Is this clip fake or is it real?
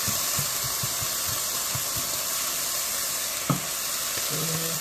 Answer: real